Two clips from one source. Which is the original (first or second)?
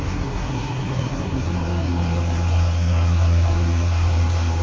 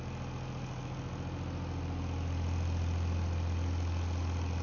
second